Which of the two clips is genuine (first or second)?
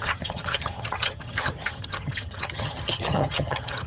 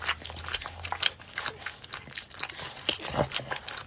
second